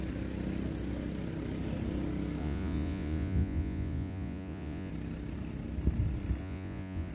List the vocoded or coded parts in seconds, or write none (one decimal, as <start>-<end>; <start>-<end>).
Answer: 2.4-4.9; 6.4-7.1